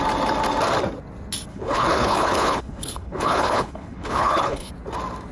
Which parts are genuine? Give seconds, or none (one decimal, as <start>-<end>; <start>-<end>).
0.0-1.5; 4.7-5.3

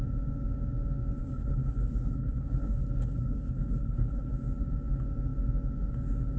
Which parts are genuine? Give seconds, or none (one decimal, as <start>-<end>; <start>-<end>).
0.0-1.2; 4.3-6.4

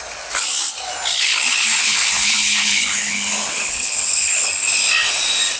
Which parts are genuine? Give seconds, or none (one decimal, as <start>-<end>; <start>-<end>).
0.0-1.1; 4.5-5.6

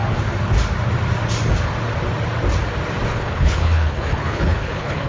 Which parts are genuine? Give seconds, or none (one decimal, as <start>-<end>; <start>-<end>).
0.0-3.1

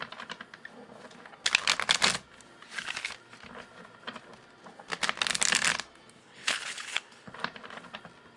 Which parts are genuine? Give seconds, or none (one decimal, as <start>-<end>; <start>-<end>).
0.0-6.2; 7.3-8.4